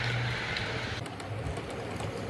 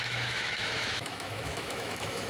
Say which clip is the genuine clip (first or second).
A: first